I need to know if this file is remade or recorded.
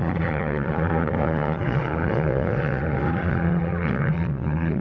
remade